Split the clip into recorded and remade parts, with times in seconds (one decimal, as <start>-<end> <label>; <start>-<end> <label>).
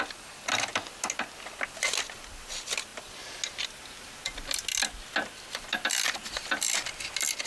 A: 0.0-7.5 recorded